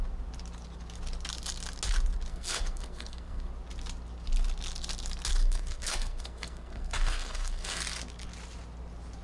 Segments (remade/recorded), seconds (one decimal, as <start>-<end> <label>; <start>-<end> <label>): 0.0-2.3 recorded; 2.3-3.5 remade; 3.5-5.4 recorded; 5.4-7.8 remade; 7.8-9.2 recorded